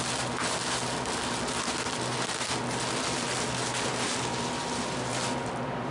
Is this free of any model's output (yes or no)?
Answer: yes